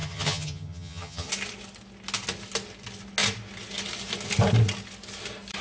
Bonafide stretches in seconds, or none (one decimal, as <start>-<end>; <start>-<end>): 1.3-5.6